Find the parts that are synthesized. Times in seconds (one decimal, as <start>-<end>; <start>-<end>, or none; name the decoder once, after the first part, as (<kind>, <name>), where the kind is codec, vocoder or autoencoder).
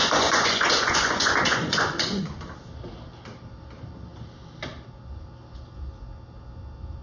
0.0-2.2 (vocoder, Vocos)